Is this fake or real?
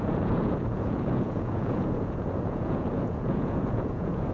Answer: fake